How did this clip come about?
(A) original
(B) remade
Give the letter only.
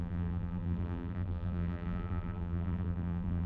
B